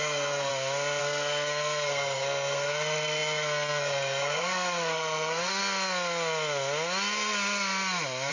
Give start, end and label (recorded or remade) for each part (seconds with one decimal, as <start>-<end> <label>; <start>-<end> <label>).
0.0-0.5 remade; 0.5-1.0 recorded; 1.0-5.6 remade; 5.6-8.3 recorded